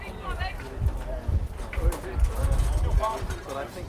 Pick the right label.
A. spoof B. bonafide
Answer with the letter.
B